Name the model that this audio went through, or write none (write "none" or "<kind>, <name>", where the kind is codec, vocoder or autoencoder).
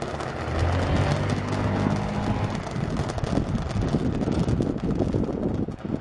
none